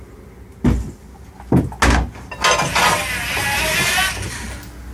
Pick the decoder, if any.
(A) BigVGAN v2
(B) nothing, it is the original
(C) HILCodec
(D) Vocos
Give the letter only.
B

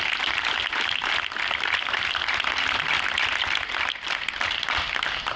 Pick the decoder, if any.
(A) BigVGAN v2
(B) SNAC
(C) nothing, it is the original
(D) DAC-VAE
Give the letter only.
C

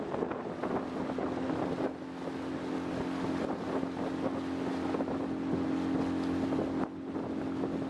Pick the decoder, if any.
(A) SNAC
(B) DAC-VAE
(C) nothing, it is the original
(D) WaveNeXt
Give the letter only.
C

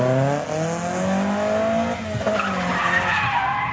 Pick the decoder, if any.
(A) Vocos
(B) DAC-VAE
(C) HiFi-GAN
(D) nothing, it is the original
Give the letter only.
D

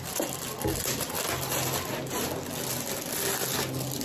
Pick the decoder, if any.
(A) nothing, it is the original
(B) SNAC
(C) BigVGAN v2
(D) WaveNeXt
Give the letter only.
A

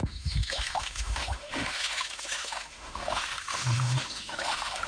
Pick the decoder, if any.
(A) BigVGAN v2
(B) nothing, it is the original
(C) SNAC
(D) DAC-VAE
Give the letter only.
D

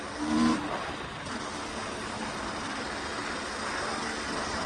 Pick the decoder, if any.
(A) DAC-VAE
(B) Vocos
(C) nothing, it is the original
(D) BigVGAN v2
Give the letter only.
C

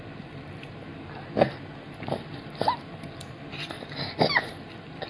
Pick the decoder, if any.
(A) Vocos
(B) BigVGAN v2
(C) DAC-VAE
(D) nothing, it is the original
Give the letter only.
B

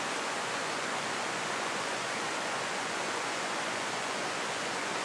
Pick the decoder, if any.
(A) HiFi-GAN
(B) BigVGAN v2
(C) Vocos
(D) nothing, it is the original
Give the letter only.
C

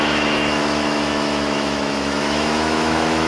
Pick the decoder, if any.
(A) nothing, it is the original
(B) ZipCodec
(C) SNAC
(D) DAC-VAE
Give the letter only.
D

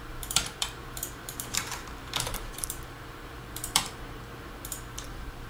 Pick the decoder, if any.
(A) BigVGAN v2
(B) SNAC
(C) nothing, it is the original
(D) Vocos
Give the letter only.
A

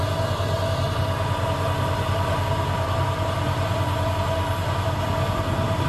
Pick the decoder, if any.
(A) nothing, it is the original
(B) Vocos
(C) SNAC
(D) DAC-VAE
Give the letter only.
A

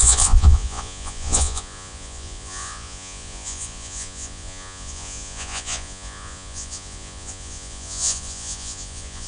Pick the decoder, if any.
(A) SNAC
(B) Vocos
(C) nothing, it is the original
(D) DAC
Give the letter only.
B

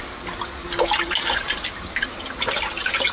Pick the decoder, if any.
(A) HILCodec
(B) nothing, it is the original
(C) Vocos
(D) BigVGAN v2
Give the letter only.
B